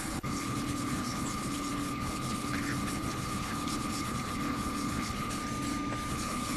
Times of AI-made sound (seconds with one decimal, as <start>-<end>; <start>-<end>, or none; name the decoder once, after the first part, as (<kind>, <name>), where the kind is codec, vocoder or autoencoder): 0.0-5.4 (codec, HILCodec); 6.1-6.6

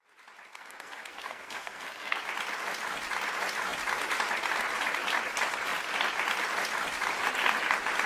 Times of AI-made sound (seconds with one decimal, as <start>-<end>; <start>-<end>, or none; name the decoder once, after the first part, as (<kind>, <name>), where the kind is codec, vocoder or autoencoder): 0.5-2.2 (codec, SNAC)

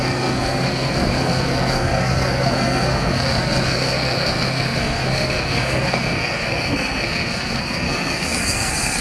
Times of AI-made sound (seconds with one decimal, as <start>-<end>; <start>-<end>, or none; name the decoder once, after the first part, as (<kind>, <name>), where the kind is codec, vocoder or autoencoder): 0.0-9.0 (codec, SNAC)

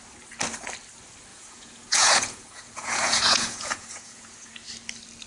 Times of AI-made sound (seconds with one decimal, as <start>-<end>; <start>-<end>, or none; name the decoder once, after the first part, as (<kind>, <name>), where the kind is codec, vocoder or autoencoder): 1.3-4.5 (vocoder, Vocos)

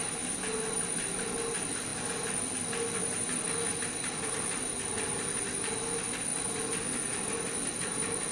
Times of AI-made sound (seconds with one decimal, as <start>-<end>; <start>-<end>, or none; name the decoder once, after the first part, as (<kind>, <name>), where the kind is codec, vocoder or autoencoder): none

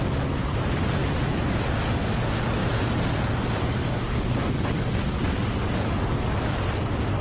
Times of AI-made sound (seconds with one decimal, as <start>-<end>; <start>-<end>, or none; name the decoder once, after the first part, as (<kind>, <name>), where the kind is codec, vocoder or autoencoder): none